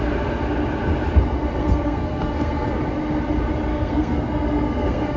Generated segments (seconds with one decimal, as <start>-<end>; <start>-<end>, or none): 1.6-2.7; 3.7-5.2